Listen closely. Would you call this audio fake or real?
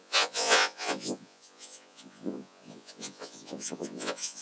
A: fake